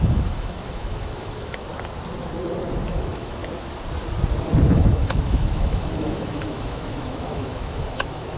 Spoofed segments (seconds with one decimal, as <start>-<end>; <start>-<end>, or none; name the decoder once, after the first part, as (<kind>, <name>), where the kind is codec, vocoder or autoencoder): 0.0-1.7 (autoencoder, DAC-VAE); 2.9-3.4; 4.7-8.4